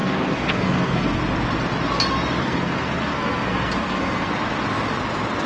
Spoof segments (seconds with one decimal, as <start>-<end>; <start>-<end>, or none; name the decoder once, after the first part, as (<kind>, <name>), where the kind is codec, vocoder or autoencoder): 0.0-1.2 (codec, SNAC); 2.4-4.3